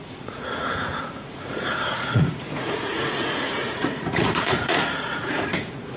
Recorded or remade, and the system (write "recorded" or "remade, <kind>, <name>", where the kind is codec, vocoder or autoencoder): remade, vocoder, Vocos